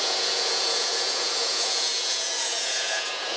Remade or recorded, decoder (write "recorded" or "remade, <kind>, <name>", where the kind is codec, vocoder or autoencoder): remade, vocoder, Vocos